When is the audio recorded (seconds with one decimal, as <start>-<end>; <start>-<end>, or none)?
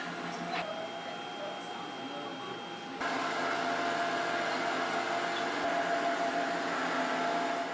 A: 0.0-7.7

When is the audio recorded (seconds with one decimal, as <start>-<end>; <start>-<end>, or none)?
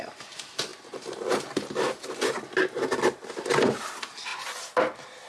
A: 0.0-5.3